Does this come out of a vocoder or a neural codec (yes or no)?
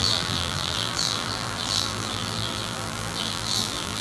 yes